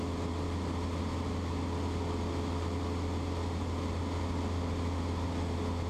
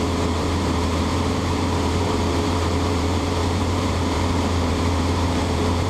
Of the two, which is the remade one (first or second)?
second